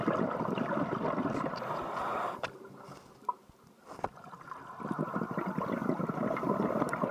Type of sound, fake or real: real